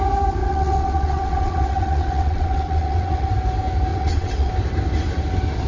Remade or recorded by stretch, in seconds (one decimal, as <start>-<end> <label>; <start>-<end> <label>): 0.0-0.4 recorded; 0.4-3.3 remade; 3.3-3.9 recorded; 3.9-4.5 remade; 4.5-5.7 recorded